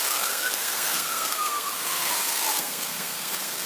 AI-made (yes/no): yes